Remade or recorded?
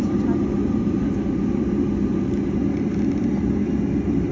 recorded